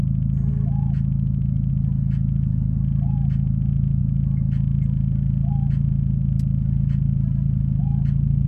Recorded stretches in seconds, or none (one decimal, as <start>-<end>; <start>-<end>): 0.0-0.5; 1.7-8.5